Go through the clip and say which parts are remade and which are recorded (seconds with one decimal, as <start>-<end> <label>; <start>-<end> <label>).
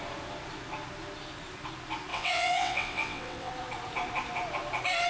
0.0-2.1 recorded; 2.1-3.5 remade; 3.5-5.1 recorded